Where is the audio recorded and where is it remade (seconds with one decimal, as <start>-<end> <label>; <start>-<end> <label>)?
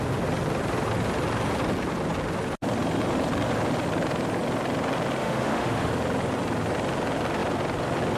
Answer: 0.0-5.2 recorded; 5.2-5.9 remade; 5.9-8.2 recorded